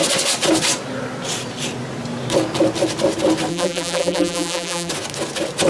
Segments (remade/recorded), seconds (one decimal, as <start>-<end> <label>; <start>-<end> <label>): 0.0-3.5 recorded; 3.5-4.9 remade; 4.9-5.7 recorded